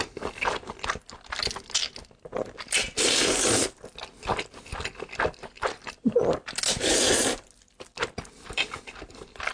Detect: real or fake real